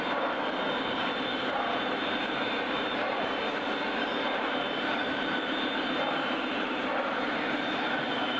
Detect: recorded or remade remade